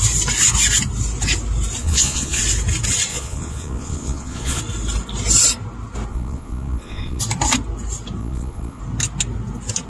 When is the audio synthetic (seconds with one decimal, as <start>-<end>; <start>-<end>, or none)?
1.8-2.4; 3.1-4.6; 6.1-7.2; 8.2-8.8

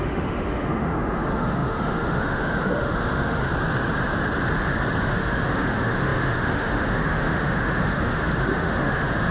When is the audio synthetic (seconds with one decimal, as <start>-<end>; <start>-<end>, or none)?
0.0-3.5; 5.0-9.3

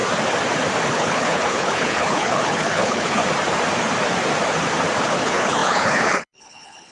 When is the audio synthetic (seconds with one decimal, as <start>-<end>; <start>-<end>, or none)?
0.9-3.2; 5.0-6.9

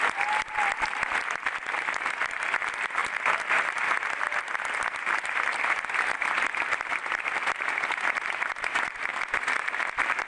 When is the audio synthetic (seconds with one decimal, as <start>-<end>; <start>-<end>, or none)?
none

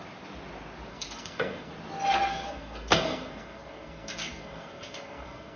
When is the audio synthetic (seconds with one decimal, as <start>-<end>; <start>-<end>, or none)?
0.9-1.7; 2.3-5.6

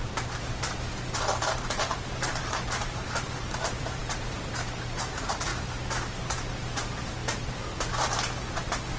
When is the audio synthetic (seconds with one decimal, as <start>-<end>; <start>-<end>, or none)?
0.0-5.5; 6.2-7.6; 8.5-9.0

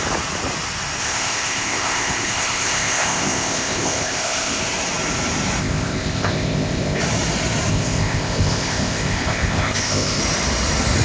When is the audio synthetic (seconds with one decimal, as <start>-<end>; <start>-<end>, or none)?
1.0-4.6; 5.6-7.0; 7.7-10.2

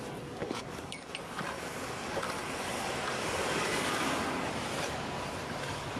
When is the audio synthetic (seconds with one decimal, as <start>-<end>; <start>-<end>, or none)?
0.4-1.1; 3.1-4.0